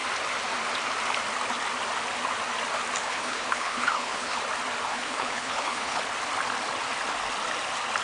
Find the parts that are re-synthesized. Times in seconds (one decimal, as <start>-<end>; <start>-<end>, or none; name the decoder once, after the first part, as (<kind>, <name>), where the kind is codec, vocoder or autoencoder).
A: 3.0-4.4 (codec, HILCodec); 4.9-6.0